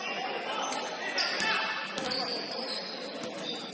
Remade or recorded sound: recorded